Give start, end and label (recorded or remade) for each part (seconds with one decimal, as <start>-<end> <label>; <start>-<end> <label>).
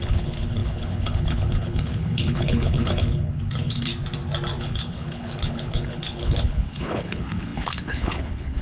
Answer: 0.0-3.9 remade; 3.9-4.6 recorded; 4.6-8.6 remade